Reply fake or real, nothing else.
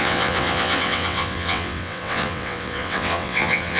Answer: fake